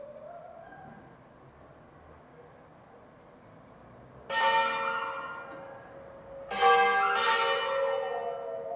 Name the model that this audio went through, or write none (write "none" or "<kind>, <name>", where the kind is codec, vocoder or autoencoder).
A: none